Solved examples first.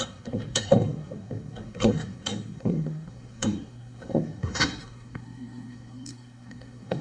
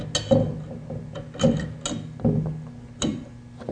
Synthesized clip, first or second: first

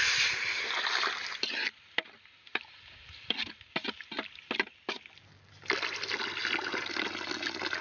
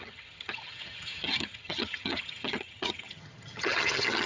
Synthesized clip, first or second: second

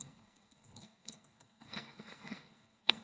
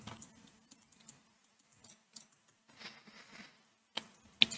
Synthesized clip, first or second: first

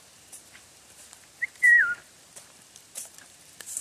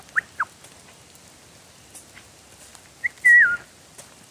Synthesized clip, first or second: first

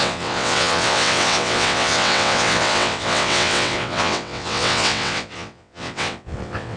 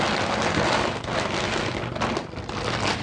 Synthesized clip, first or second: first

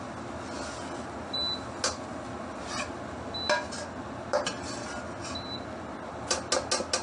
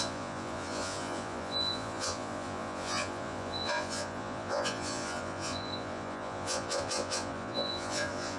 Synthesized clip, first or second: second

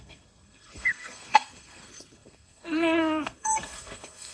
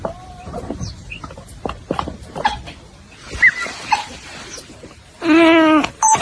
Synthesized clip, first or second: first